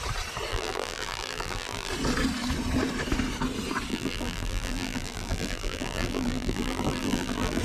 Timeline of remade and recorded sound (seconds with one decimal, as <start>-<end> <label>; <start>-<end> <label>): 0.0-0.5 recorded; 0.5-1.9 remade; 1.9-3.9 recorded; 3.9-7.6 remade

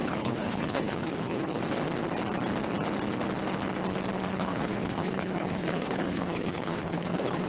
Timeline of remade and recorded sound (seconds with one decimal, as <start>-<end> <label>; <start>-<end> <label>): 0.0-1.6 remade; 1.6-4.3 recorded; 4.3-7.5 remade

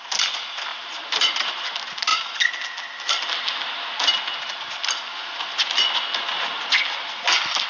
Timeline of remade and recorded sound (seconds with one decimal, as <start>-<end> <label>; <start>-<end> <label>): 0.0-0.7 recorded; 0.7-1.5 remade; 1.5-7.7 recorded

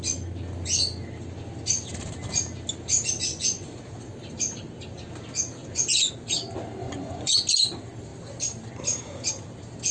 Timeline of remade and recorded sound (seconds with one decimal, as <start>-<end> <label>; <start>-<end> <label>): 0.0-3.3 recorded; 3.3-3.8 remade; 3.8-5.6 recorded; 5.6-6.1 remade; 6.1-6.8 recorded; 6.8-7.3 remade; 7.3-9.9 recorded

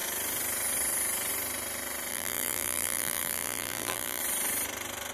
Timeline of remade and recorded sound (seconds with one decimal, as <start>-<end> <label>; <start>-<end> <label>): 0.0-2.1 recorded; 2.1-4.2 remade; 4.2-5.1 recorded